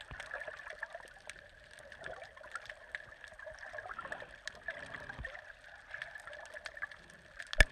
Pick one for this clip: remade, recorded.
recorded